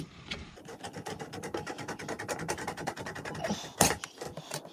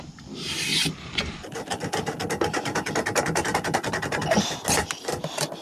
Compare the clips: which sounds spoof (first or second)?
first